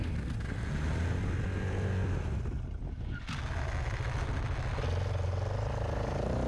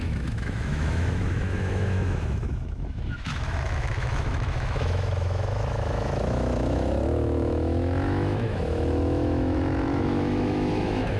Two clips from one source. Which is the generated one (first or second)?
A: second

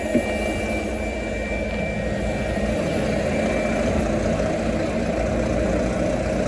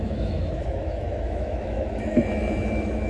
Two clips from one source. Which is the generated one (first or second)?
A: second